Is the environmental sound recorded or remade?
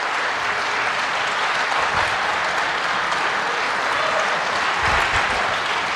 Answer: recorded